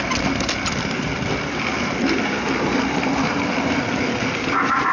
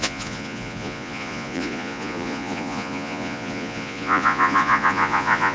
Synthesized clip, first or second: second